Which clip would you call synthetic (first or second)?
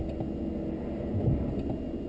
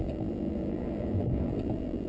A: second